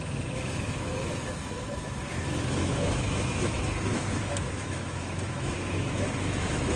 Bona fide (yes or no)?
no